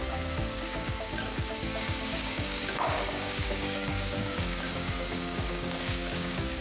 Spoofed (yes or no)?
yes